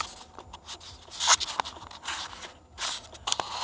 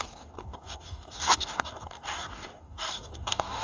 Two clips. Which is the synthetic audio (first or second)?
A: second